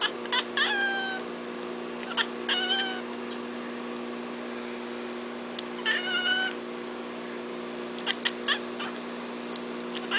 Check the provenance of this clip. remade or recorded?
recorded